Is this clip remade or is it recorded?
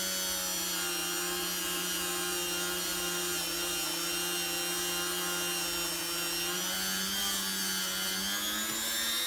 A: recorded